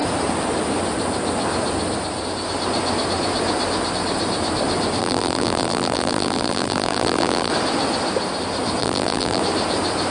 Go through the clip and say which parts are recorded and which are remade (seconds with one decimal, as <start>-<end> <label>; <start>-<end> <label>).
0.0-5.0 recorded; 5.0-7.5 remade; 7.5-8.8 recorded; 8.8-9.4 remade; 9.4-10.1 recorded